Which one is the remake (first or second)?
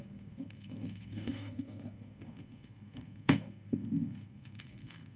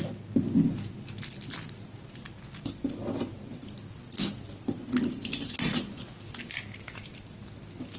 first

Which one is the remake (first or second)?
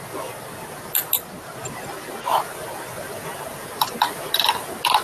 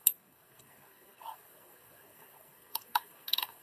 second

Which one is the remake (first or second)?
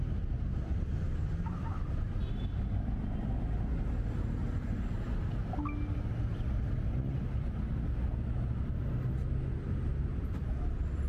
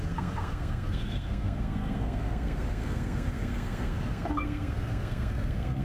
second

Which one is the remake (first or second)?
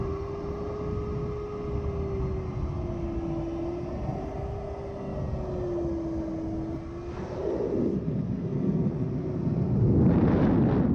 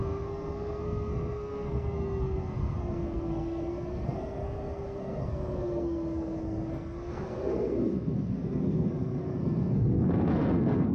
second